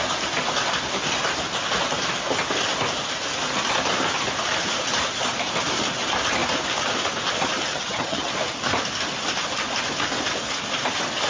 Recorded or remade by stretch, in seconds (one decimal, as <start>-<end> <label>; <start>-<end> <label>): 0.0-7.7 recorded; 7.7-8.3 remade; 8.3-11.3 recorded